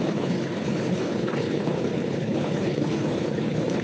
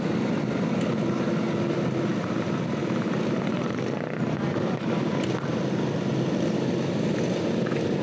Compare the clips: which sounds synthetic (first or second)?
first